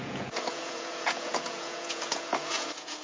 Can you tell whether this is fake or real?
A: fake